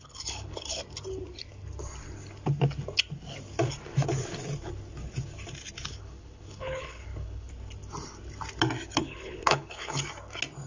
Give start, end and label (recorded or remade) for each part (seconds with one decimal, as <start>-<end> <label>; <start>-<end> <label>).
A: 0.0-0.8 remade; 0.8-5.9 recorded; 5.9-7.5 remade; 7.5-9.0 recorded; 9.0-10.0 remade; 10.0-10.7 recorded